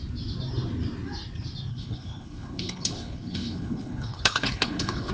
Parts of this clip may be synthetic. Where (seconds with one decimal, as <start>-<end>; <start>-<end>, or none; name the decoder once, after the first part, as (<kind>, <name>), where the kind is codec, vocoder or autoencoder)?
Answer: 1.7-5.1 (codec, HILCodec)